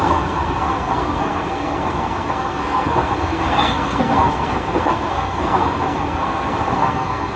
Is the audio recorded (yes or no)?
no